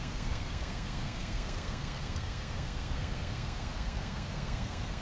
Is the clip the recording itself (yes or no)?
no